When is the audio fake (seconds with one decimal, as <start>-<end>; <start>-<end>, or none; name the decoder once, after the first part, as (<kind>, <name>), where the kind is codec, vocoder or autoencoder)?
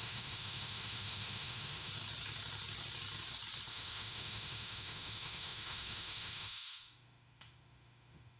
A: 0.0-1.9 (autoencoder, DAC-VAE); 3.7-8.4